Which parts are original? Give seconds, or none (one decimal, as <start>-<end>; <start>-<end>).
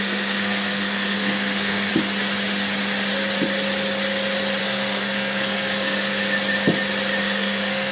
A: 1.9-4.6; 6.2-7.2